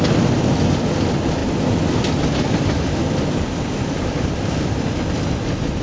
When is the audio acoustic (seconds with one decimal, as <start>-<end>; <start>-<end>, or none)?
0.0-5.8